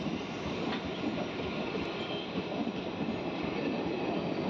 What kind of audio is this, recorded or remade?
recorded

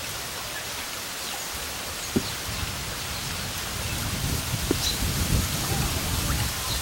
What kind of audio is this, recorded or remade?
recorded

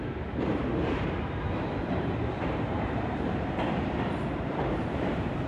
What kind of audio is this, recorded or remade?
remade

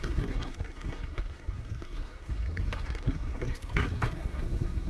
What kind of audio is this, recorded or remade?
remade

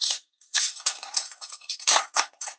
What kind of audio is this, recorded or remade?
remade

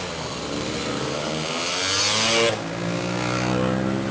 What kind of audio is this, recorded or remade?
recorded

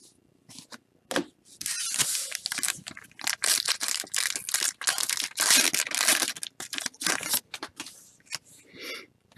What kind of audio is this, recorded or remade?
recorded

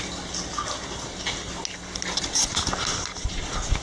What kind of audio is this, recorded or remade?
recorded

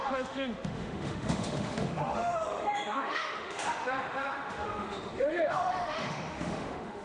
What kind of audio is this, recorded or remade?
remade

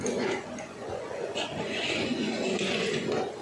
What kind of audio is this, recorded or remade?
remade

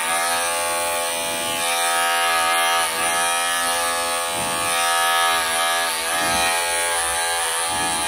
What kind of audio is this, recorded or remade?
recorded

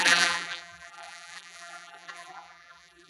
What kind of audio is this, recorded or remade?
remade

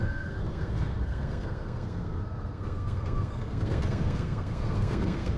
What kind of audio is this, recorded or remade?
remade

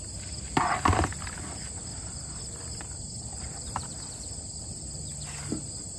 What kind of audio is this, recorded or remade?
recorded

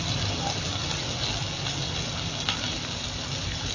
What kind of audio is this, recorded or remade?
recorded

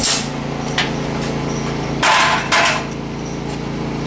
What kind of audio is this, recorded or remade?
recorded